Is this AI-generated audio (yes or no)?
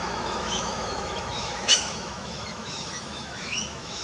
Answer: yes